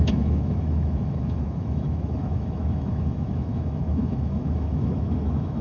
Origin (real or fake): fake